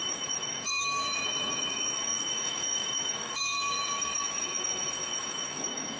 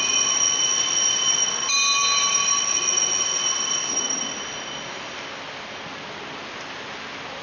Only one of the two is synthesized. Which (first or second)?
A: first